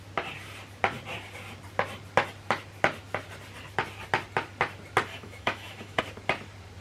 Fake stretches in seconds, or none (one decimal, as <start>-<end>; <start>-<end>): 5.1-6.0